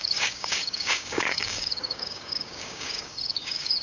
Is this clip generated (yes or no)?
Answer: yes